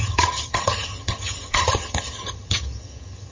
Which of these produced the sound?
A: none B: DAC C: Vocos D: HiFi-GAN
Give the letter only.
D